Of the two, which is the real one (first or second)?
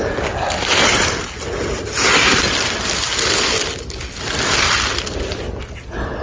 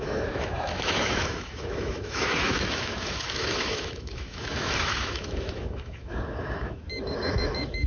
first